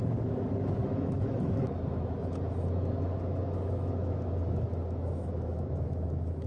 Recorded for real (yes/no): no